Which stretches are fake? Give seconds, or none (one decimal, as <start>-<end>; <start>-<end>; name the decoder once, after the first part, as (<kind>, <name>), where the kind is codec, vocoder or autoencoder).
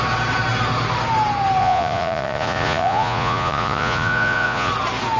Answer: 1.6-4.7 (vocoder, Vocos)